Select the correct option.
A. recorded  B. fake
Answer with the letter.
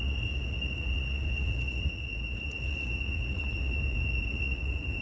B